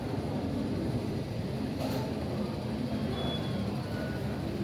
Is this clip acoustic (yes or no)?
yes